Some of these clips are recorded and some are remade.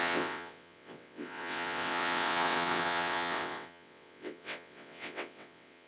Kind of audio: remade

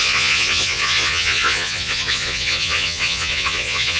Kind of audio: remade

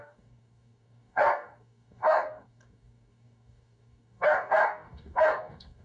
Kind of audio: remade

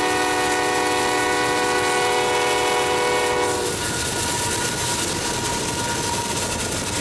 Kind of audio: recorded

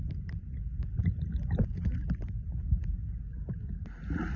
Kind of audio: recorded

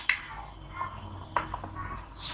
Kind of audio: recorded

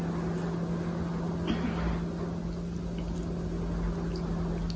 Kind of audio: recorded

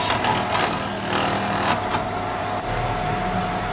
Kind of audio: recorded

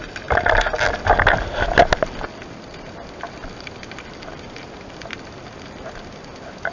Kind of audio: recorded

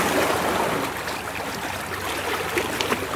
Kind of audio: recorded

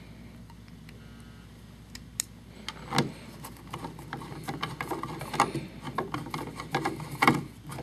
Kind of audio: recorded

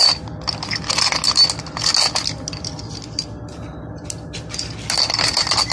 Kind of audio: recorded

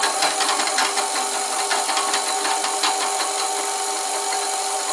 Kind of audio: recorded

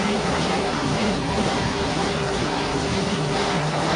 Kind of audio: remade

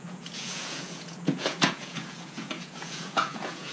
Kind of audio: remade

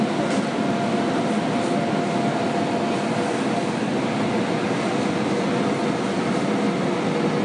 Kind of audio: recorded